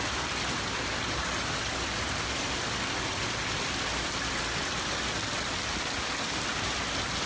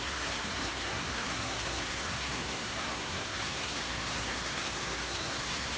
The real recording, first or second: first